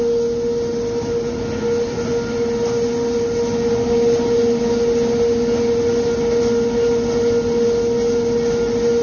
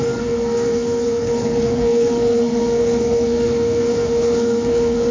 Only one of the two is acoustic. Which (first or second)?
first